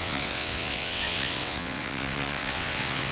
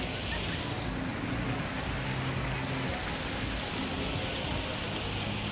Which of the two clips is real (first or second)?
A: second